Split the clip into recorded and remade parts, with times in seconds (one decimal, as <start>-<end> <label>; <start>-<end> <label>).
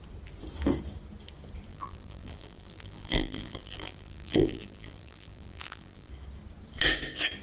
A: 0.0-1.7 recorded; 1.7-6.1 remade; 6.1-7.4 recorded